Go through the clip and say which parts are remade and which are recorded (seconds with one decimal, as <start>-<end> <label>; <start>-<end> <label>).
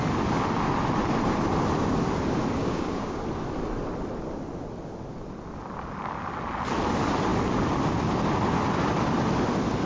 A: 0.0-2.6 recorded; 2.6-3.2 remade; 3.2-9.9 recorded